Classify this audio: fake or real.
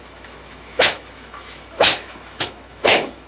fake